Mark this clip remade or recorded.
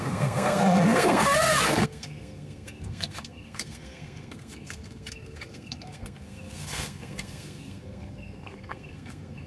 remade